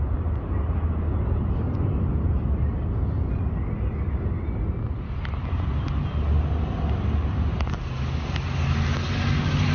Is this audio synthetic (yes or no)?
no